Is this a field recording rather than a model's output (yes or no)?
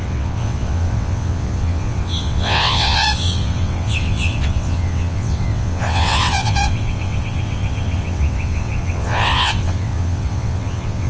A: no